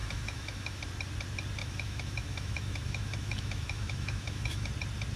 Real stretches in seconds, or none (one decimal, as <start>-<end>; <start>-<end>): 0.8-1.6; 4.7-5.2